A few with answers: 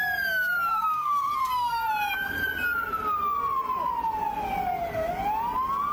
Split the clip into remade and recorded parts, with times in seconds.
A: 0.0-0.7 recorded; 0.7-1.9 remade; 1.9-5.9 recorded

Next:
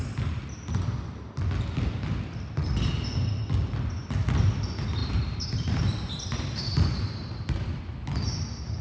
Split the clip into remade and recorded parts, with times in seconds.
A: 0.0-5.0 recorded; 5.0-7.8 remade; 7.8-8.8 recorded

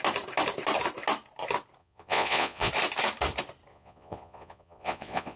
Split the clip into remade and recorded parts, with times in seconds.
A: 0.0-1.8 recorded; 1.8-2.7 remade; 2.7-3.7 recorded; 3.7-5.4 remade

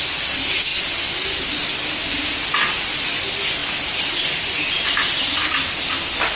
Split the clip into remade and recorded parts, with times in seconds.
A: 0.0-3.6 recorded; 3.6-5.5 remade; 5.5-6.4 recorded